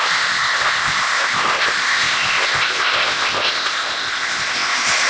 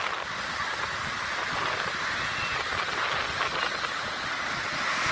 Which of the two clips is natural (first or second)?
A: second